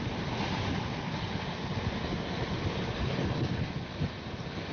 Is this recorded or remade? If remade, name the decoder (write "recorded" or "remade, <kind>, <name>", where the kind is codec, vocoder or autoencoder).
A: recorded